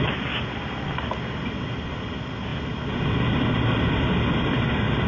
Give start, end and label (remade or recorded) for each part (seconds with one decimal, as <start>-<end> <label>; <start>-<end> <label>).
0.0-5.1 recorded